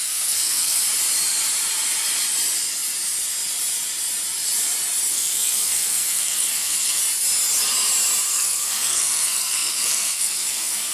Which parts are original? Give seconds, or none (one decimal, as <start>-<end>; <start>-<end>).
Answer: 0.8-5.1; 7.0-8.3